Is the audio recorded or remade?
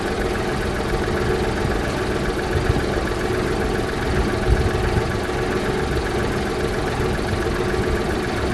recorded